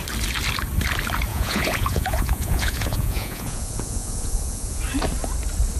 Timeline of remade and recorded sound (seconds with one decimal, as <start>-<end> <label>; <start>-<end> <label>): 0.0-1.3 recorded; 1.3-4.8 remade; 4.8-5.8 recorded